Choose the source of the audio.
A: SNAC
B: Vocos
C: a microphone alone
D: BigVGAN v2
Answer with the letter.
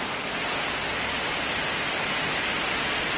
C